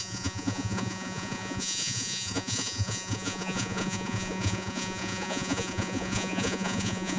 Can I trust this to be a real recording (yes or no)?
no